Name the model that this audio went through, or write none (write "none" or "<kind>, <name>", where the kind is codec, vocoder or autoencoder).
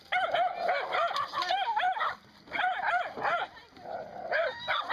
none